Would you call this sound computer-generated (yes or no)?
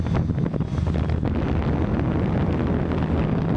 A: no